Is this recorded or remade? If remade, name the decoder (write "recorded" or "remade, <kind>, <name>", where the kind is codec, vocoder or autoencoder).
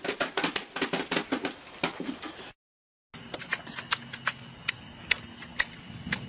recorded